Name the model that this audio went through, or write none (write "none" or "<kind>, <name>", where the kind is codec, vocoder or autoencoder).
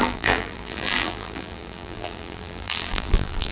vocoder, BigVGAN v2